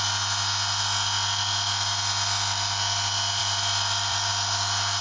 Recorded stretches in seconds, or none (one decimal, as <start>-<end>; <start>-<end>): 0.0-3.4; 4.3-5.0